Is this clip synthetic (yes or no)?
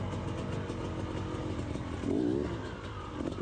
no